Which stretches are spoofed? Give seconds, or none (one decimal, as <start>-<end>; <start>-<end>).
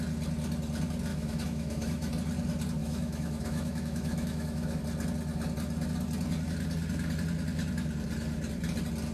1.1-2.1; 2.8-4.8